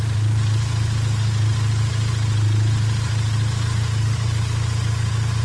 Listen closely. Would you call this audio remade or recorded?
recorded